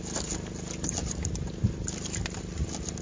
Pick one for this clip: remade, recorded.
recorded